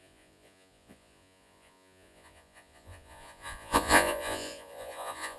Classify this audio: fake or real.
fake